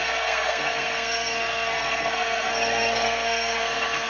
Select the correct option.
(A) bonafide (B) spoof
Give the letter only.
B